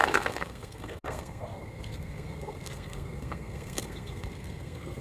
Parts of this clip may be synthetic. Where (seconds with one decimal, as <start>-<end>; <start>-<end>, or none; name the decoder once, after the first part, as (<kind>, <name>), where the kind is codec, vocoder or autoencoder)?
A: 0.0-5.0 (codec, SNAC)